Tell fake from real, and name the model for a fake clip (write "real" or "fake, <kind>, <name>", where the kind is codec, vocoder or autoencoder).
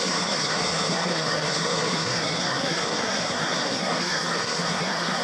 fake, codec, SNAC